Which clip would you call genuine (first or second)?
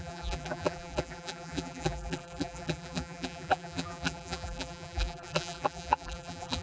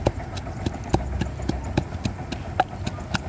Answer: second